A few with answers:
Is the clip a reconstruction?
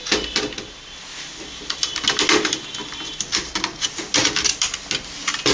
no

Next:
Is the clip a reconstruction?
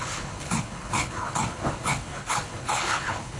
yes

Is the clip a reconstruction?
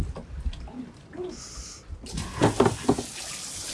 no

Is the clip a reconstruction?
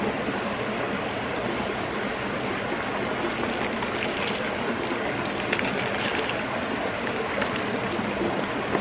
no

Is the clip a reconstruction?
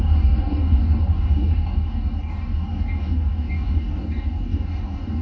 yes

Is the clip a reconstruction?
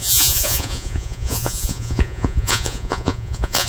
yes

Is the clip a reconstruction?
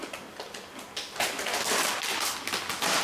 no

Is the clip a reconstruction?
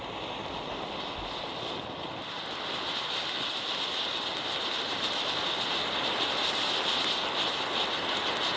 no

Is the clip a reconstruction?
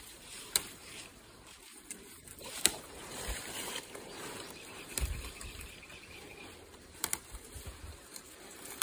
yes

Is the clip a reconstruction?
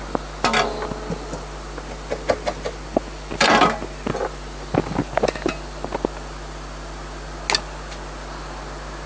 no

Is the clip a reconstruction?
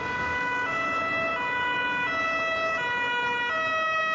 no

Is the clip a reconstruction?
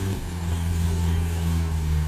yes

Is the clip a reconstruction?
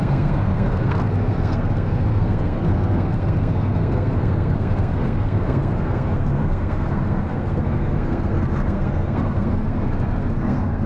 yes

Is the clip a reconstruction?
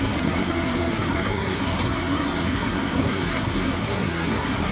yes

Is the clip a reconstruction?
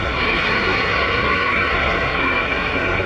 yes